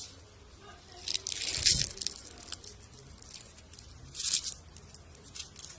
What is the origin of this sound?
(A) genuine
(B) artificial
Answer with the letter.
A